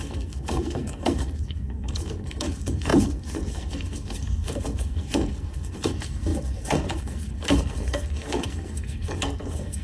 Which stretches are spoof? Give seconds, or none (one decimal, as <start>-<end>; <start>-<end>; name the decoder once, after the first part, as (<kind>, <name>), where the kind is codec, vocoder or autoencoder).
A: 0.0-9.8 (codec, SNAC)